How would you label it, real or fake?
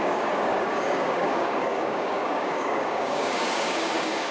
fake